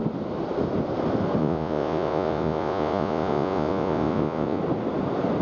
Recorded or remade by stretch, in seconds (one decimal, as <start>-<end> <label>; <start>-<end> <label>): 0.0-1.4 recorded; 1.4-4.6 remade; 4.6-5.4 recorded